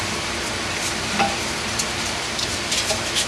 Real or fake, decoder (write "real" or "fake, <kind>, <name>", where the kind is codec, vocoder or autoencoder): real